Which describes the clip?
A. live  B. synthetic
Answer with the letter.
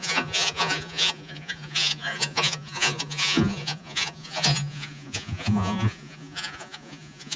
B